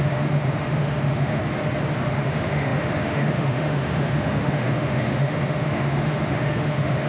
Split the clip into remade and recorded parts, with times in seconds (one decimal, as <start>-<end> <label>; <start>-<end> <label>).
0.0-1.4 remade; 1.4-2.1 recorded; 2.1-7.1 remade

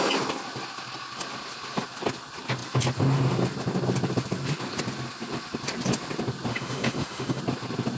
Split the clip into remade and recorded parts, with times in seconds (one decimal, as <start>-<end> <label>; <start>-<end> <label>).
0.0-6.5 recorded; 6.5-7.4 remade; 7.4-8.0 recorded